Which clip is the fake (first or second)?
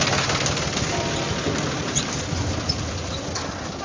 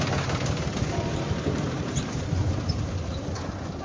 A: second